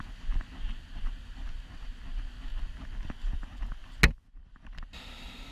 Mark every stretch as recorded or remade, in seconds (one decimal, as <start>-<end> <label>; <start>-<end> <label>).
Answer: 0.0-5.5 recorded